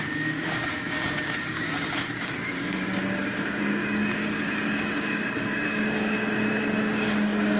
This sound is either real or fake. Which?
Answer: fake